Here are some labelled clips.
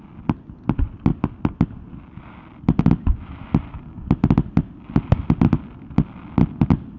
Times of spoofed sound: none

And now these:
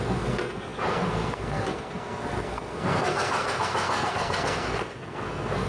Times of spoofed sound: 0.0-5.7 (codec, SNAC)